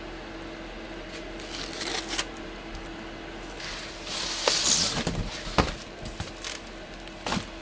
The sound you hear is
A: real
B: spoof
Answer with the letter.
A